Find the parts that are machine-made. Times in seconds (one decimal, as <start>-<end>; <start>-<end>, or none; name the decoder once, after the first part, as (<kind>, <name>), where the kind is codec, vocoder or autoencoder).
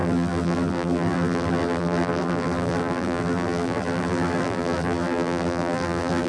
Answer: 0.0-6.3 (vocoder, BigVGAN v2)